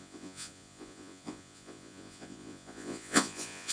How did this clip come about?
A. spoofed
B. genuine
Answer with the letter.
A